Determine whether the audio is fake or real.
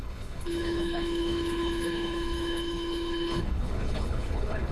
fake